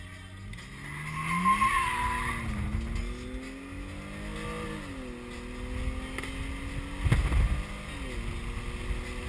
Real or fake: real